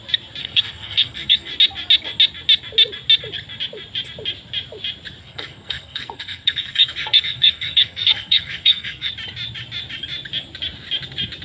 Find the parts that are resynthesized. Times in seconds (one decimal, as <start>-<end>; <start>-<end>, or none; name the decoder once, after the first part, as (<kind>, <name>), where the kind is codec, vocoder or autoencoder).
0.4-1.5 (codec, SNAC); 5.2-9.1

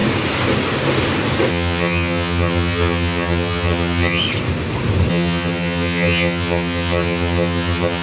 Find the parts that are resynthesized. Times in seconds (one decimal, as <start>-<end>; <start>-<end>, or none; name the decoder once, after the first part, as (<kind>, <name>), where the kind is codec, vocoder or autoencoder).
1.5-4.2 (vocoder, HiFi-GAN); 5.1-8.0

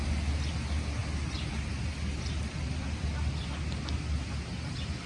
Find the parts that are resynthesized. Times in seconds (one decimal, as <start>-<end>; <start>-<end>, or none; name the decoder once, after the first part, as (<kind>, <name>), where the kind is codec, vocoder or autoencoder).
none

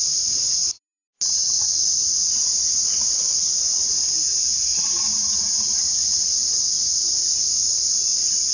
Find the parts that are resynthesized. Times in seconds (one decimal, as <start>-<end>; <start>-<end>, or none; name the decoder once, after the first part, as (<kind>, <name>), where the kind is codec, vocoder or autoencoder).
none

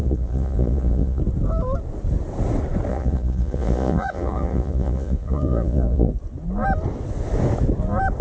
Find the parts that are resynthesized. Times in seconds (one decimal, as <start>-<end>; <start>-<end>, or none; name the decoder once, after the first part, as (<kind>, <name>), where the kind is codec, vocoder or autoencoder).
0.0-1.2 (vocoder, Vocos); 2.9-6.1